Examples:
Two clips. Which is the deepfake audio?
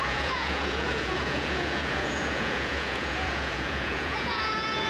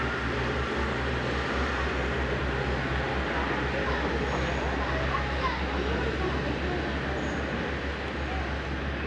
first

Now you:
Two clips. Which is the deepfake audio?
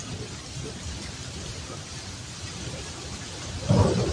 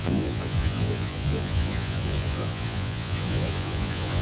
second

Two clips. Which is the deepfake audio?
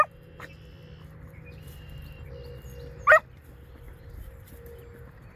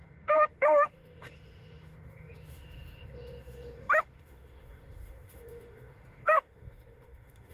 second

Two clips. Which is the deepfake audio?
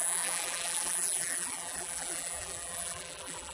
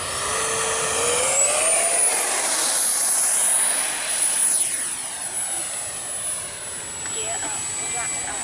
first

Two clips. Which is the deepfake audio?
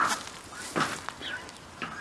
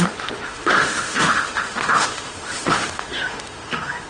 second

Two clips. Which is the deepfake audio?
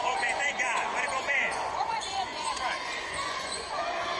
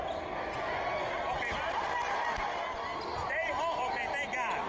first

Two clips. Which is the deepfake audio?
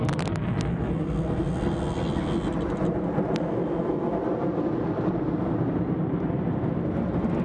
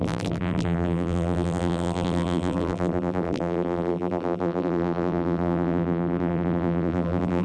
second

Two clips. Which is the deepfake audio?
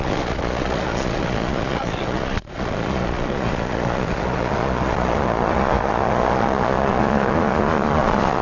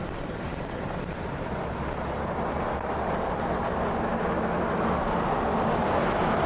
first